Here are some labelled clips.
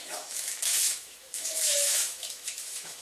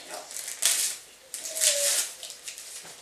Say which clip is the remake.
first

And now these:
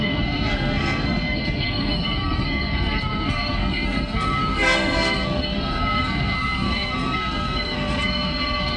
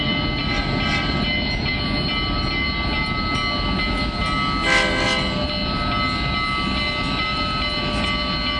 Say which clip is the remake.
first